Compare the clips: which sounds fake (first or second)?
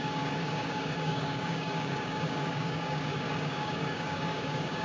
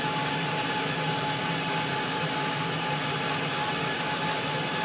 first